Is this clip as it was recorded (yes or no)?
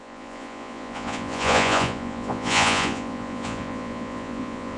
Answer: no